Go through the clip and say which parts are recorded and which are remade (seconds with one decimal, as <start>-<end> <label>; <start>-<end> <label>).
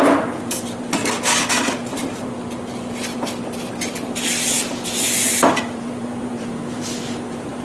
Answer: 0.0-1.0 remade; 1.0-5.6 recorded; 5.6-7.6 remade